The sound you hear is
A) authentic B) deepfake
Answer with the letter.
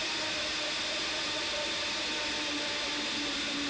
A